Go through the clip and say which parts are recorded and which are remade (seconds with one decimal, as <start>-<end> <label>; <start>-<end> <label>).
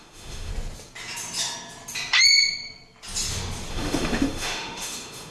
0.0-0.5 remade; 0.5-3.7 recorded; 3.7-5.3 remade